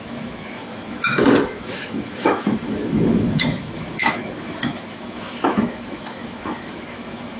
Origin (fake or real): fake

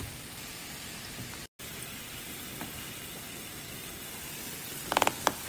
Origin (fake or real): real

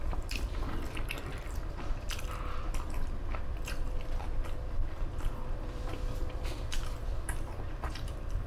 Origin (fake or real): fake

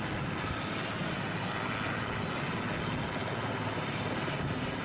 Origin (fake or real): real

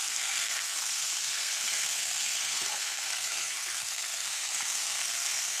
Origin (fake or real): fake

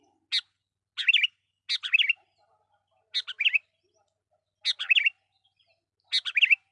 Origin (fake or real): real